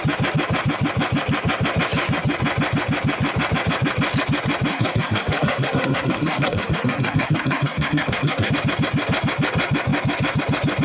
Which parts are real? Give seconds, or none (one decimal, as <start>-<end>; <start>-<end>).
0.0-4.7; 8.5-10.8